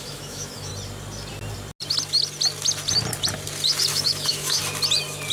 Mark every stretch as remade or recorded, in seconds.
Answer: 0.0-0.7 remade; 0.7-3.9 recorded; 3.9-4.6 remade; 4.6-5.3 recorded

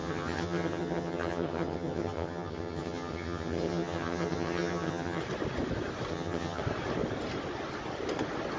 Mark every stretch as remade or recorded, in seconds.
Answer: 0.0-5.2 remade; 5.2-6.1 recorded; 6.1-6.6 remade; 6.6-8.6 recorded

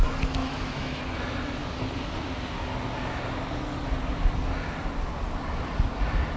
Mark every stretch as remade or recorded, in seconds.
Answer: 0.0-0.4 recorded; 0.4-1.0 remade; 1.0-6.4 recorded